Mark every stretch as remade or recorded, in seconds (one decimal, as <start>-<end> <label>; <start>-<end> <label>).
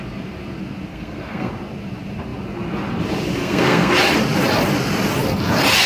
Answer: 0.0-0.9 recorded; 0.9-1.5 remade; 1.5-3.4 recorded; 3.4-3.9 remade; 3.9-5.9 recorded